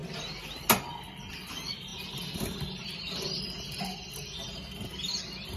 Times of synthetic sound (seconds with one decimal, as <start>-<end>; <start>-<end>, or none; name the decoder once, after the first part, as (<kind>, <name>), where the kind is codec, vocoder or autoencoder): 1.3-1.9 (vocoder, BigVGAN v2)